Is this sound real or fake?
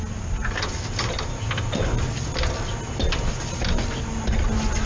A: real